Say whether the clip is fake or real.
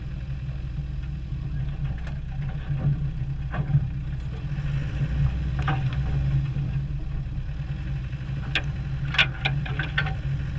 real